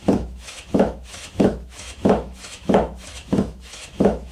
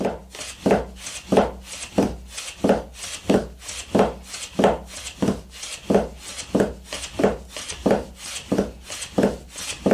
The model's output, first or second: first